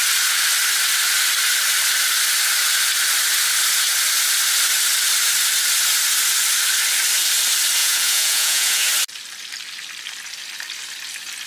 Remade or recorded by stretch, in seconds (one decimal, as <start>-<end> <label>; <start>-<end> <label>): 0.0-7.8 recorded; 7.8-8.9 remade; 8.9-11.5 recorded